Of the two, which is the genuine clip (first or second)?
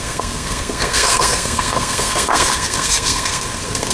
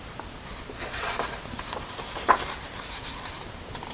second